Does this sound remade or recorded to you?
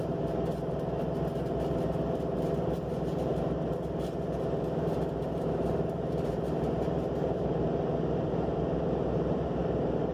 remade